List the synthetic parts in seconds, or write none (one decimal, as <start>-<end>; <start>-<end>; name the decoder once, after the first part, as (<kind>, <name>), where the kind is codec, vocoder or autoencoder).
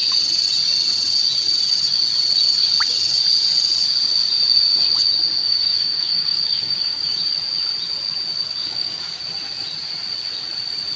5.4-7.2 (codec, DAC); 8.6-9.2